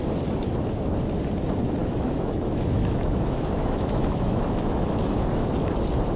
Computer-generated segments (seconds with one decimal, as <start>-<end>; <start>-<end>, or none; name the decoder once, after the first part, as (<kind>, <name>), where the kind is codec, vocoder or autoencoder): 1.8-5.5 (autoencoder, DAC-VAE)